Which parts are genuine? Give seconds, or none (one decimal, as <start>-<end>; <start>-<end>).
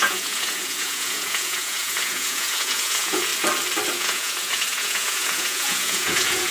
3.3-3.9